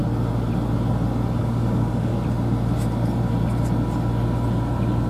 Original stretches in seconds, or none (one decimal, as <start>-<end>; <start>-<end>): 0.0-1.4; 2.1-5.1